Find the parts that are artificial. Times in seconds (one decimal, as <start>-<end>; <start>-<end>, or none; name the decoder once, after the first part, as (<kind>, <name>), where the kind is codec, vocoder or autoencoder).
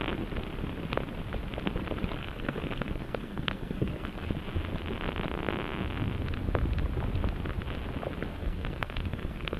2.2-4.3 (codec, SNAC); 8.3-9.6